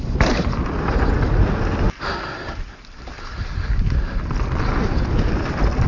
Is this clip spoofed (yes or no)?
no